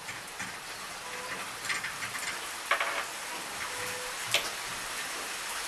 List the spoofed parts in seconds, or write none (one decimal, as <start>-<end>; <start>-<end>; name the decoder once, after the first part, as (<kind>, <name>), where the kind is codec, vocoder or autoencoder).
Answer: 0.0-0.5 (vocoder, BigVGAN v2)